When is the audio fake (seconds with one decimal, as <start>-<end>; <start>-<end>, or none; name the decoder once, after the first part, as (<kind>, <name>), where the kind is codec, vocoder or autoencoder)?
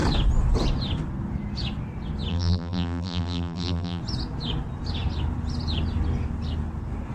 2.3-4.0 (vocoder, BigVGAN v2)